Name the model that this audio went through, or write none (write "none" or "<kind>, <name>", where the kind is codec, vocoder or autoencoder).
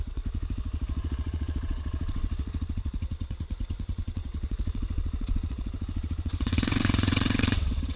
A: vocoder, WaveNeXt